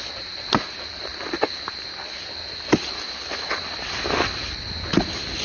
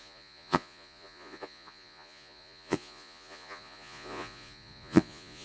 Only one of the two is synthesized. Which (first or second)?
second